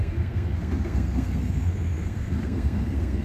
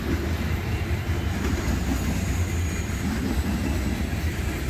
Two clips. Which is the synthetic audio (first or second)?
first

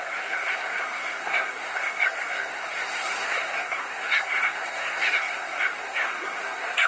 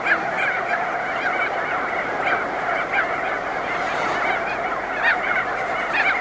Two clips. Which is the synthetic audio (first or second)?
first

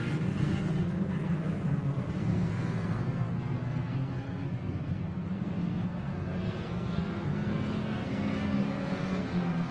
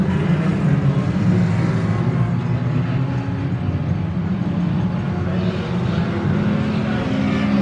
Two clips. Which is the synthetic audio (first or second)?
first